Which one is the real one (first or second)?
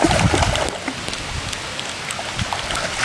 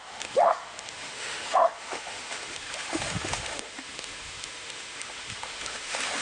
first